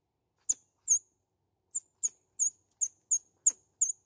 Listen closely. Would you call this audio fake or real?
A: real